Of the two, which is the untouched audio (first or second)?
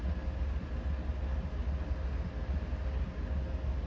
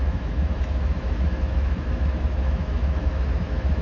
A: first